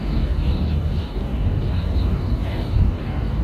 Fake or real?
fake